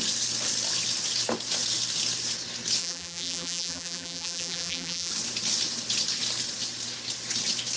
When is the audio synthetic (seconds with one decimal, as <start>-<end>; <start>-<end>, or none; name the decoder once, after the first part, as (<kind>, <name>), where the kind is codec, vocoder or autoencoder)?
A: 2.8-5.1 (vocoder, BigVGAN v2)